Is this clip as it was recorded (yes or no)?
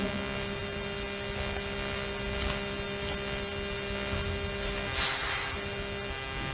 yes